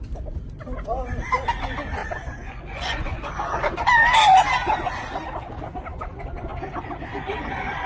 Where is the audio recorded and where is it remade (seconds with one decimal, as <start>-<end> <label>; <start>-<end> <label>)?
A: 0.0-2.0 recorded; 2.0-3.3 remade; 3.3-7.9 recorded